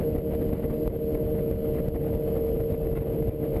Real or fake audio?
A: real